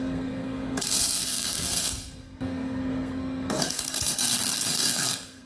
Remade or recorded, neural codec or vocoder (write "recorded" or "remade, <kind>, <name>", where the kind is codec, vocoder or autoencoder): remade, codec, SNAC